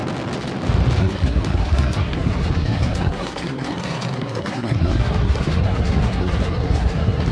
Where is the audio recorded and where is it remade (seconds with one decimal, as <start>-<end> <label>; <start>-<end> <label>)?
0.0-1.0 recorded; 1.0-7.3 remade